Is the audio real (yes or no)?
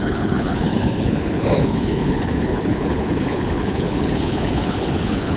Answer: no